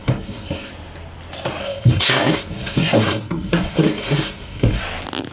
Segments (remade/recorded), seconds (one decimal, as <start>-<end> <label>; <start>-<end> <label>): 0.0-0.7 remade; 0.7-1.6 recorded; 1.6-4.8 remade; 4.8-5.3 recorded